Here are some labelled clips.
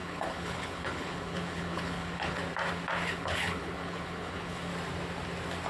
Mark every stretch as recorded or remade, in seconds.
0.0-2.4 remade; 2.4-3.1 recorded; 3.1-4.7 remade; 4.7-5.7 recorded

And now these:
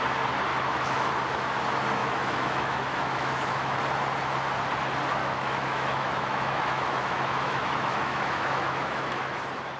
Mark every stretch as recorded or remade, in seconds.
0.0-0.5 recorded; 0.5-1.1 remade; 1.1-2.0 recorded; 2.0-3.8 remade; 3.8-5.2 recorded; 5.2-9.4 remade; 9.4-9.8 recorded

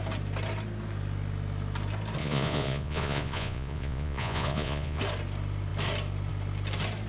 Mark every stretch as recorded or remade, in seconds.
0.0-2.2 recorded; 2.2-5.0 remade; 5.0-7.1 recorded

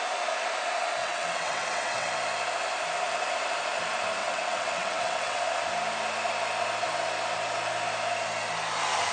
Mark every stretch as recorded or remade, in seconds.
0.0-1.0 recorded; 1.0-2.1 remade; 2.1-4.2 recorded; 4.2-5.4 remade; 5.4-9.1 recorded